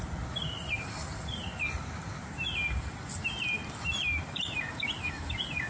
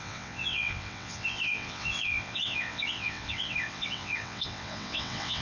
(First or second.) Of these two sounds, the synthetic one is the second